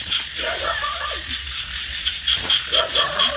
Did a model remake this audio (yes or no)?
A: yes